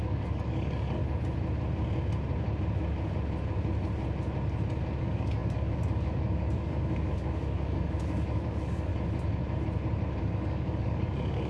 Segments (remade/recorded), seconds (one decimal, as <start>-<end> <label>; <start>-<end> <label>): 0.0-1.0 remade; 1.0-5.0 recorded; 5.0-8.9 remade; 8.9-10.2 recorded; 10.2-11.5 remade